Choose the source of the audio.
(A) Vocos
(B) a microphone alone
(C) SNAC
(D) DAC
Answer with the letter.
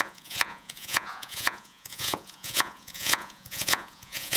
A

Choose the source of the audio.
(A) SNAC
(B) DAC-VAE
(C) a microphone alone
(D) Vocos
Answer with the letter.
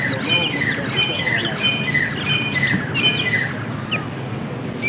C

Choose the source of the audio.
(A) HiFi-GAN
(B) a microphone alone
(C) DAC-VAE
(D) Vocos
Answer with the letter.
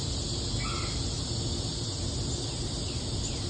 B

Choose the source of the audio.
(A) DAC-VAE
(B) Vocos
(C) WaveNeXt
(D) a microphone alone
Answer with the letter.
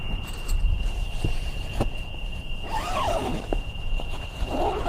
B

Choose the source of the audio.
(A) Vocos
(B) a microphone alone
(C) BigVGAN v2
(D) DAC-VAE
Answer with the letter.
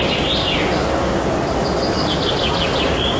B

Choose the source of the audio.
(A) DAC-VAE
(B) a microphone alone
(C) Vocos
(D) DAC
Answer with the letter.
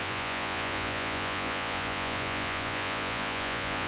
C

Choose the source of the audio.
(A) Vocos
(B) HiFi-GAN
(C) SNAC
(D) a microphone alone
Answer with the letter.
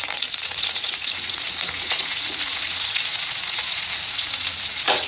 A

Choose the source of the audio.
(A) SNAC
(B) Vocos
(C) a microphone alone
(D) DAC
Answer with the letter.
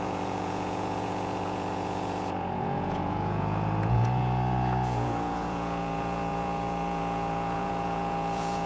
B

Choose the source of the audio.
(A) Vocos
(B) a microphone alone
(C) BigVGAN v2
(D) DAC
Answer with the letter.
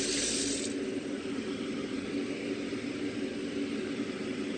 B